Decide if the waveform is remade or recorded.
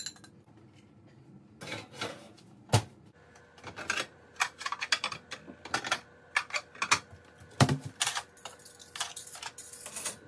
recorded